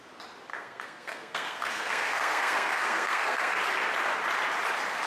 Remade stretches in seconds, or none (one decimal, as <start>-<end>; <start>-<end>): 0.5-3.6